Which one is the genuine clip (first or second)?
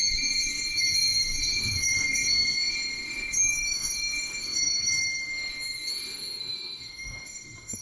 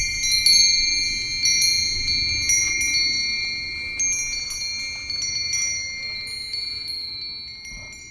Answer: second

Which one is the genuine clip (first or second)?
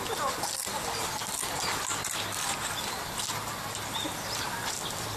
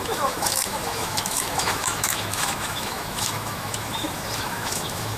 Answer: first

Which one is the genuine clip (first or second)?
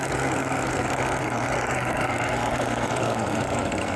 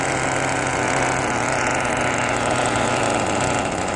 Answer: second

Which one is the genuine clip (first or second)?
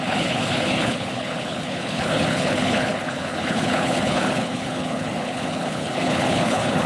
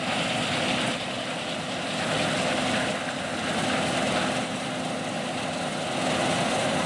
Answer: second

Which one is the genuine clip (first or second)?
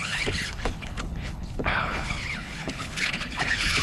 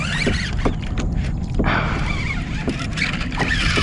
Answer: second